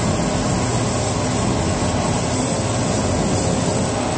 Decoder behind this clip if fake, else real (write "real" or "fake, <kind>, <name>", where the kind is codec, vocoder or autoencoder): real